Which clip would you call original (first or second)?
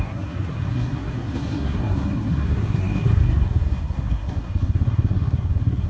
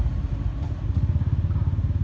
second